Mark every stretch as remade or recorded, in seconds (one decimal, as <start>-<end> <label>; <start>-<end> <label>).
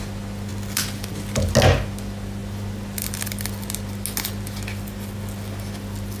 0.0-6.2 recorded